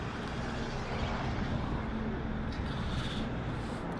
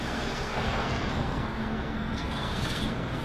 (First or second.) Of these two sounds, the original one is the first